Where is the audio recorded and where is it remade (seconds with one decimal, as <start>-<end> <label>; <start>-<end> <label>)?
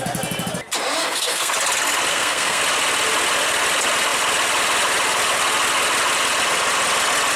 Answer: 0.0-1.0 recorded; 1.0-1.5 remade; 1.5-2.1 recorded; 2.1-2.6 remade; 2.6-7.4 recorded